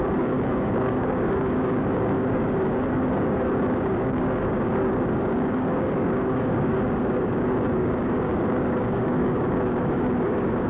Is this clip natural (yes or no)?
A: no